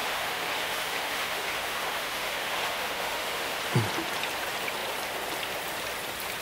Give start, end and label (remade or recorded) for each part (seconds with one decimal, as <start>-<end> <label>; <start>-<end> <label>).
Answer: 0.0-3.6 remade; 3.6-6.4 recorded